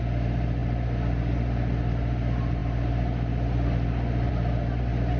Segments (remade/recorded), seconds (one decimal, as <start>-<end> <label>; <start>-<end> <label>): 0.0-5.2 recorded